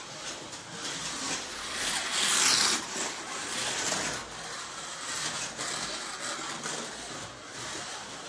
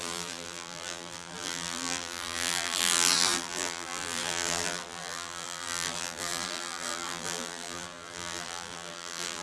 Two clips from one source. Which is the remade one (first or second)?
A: second